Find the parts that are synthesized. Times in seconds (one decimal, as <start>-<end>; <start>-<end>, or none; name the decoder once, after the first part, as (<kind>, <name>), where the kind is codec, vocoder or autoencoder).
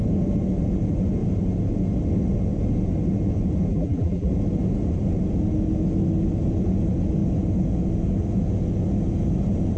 3.7-4.3 (vocoder, BigVGAN v2)